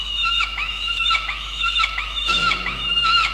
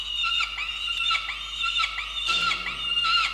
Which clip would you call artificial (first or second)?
first